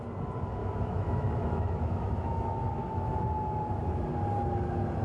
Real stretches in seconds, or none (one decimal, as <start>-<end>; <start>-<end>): 0.0-0.6; 3.2-5.0